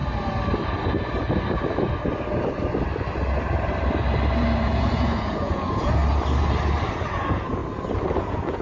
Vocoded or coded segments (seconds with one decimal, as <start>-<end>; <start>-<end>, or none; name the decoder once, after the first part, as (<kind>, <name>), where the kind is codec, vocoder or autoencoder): 4.6-6.0 (vocoder, Vocos); 7.1-7.6; 8.2-8.6